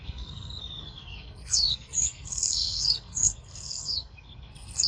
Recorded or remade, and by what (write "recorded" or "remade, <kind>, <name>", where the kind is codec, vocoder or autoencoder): remade, codec, SNAC